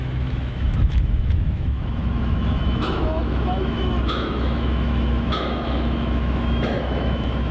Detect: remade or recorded remade